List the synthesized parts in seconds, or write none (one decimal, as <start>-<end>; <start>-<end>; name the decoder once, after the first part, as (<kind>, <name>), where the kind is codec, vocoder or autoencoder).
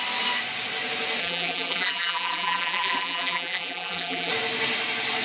1.2-4.3 (vocoder, BigVGAN v2)